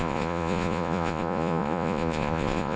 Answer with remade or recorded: remade